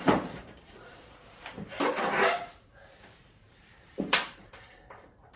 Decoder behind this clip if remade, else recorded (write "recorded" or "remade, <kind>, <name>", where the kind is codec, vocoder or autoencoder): remade, vocoder, BigVGAN v2